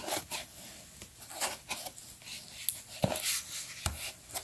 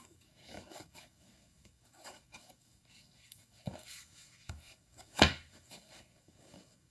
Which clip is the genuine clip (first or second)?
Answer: first